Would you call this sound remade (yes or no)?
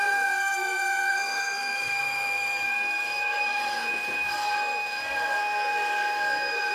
yes